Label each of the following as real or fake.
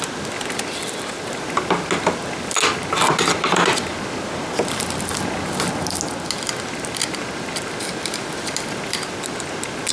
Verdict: real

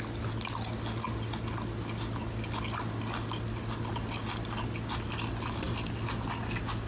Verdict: real